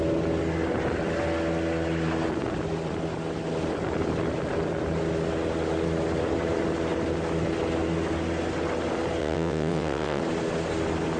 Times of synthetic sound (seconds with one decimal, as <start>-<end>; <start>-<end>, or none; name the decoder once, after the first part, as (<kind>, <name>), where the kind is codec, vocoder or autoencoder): 9.2-10.2 (vocoder, WaveNeXt)